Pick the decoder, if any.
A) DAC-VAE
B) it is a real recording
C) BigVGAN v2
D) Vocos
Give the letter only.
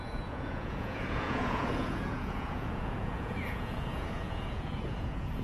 D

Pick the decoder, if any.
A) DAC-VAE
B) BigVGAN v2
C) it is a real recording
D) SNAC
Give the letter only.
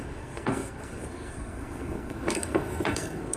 D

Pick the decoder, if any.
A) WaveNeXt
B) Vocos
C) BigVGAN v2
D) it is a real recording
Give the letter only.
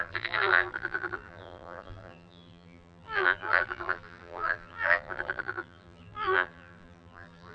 C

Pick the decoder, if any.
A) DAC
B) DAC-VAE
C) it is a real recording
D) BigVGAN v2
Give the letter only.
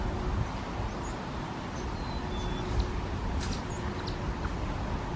C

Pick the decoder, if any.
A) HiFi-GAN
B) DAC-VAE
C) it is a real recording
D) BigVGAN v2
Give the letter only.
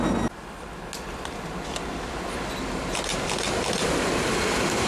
C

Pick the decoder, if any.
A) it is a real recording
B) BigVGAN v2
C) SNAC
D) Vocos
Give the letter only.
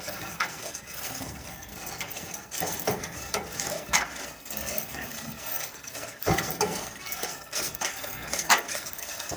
C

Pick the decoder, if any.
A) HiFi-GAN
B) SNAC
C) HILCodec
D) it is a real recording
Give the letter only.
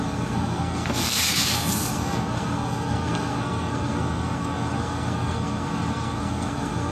B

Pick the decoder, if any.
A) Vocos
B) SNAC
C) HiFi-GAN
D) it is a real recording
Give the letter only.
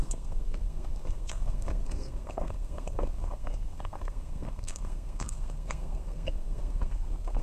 B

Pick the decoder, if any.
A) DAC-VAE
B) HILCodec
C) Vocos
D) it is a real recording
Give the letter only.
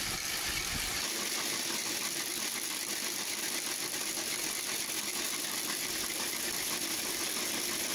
D